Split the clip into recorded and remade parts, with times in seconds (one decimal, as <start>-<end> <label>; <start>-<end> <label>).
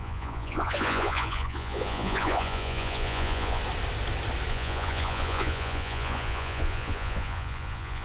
0.0-3.6 remade; 3.6-4.5 recorded; 4.5-8.0 remade